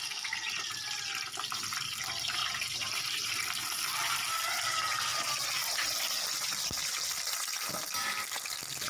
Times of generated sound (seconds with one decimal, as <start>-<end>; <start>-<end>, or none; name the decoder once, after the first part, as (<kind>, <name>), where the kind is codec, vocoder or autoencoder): none